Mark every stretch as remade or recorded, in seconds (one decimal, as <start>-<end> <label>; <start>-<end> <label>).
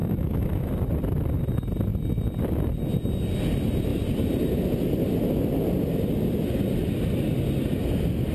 0.0-0.7 remade; 0.7-8.3 recorded